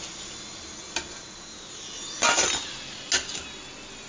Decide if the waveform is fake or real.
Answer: real